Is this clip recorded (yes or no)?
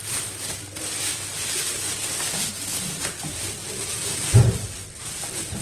no